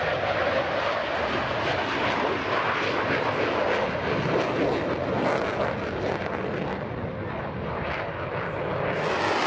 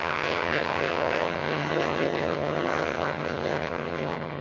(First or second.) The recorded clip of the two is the first